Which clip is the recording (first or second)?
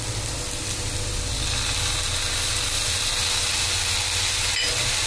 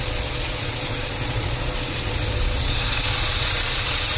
first